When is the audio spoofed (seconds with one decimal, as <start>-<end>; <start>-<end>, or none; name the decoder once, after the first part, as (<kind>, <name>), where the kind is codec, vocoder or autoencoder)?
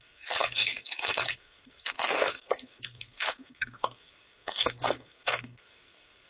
0.0-6.3 (codec, SNAC)